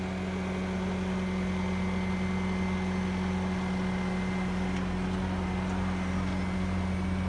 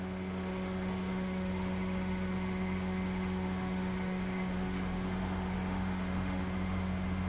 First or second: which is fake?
second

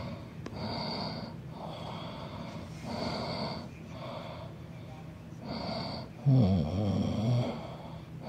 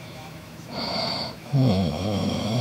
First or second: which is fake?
second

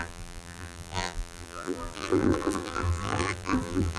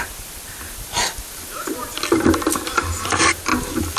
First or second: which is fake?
first